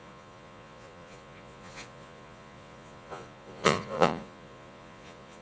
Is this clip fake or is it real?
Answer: fake